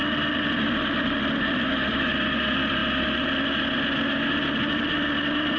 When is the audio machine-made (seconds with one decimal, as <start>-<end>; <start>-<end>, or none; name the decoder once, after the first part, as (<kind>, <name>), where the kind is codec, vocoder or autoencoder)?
1.1-2.8 (vocoder, BigVGAN v2); 4.7-5.6